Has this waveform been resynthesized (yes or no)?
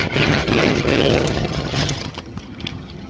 yes